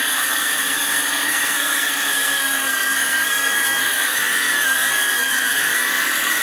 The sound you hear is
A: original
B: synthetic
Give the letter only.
B